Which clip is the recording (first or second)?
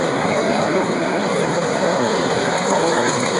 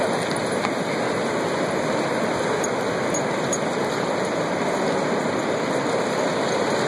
second